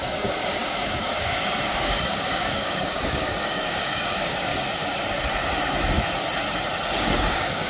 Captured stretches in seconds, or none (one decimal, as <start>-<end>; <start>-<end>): 4.5-7.0